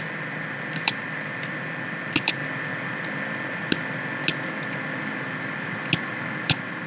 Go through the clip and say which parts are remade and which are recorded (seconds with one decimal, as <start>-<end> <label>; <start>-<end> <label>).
0.0-6.9 recorded